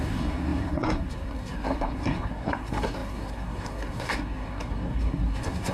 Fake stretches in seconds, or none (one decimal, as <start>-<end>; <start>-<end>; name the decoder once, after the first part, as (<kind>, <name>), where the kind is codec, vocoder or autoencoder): 0.0-5.7 (codec, SNAC)